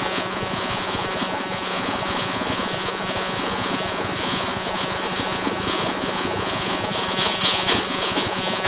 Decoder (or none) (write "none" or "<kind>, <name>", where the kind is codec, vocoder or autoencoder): vocoder, Vocos